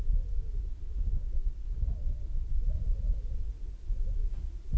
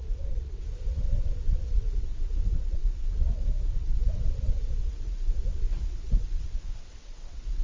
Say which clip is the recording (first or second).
first